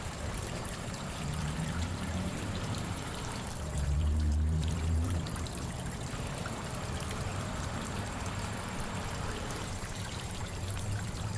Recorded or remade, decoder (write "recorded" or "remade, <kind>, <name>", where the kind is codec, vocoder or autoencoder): remade, vocoder, BigVGAN v2